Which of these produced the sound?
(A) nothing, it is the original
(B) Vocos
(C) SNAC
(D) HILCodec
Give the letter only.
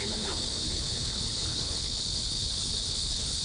D